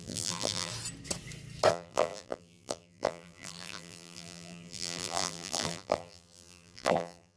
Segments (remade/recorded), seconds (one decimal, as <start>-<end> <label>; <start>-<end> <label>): 0.0-0.7 remade; 0.7-1.7 recorded; 1.7-7.4 remade